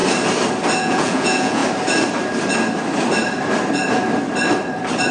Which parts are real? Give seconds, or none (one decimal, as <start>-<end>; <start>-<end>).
0.0-0.8; 1.6-5.1